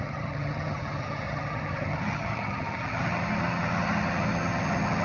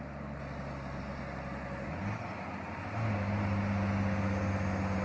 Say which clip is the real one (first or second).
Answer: second